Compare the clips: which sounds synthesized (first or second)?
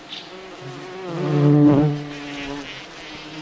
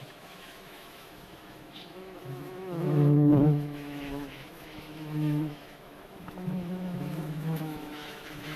second